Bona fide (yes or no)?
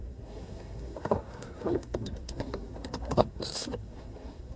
no